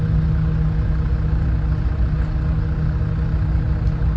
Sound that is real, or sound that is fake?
real